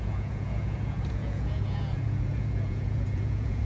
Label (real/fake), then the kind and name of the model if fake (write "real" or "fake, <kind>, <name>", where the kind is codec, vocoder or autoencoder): fake, vocoder, Vocos